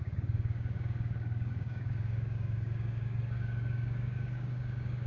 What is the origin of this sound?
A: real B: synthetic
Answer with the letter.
B